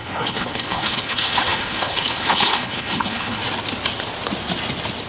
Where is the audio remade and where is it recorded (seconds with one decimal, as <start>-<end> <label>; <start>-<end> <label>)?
0.0-3.4 remade; 3.4-5.1 recorded